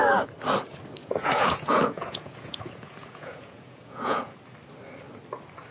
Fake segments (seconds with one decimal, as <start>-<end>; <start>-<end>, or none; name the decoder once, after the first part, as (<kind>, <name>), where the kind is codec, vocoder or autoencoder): 1.0-4.4 (vocoder, Vocos)